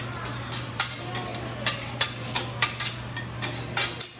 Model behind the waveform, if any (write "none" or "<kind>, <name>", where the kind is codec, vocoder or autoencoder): none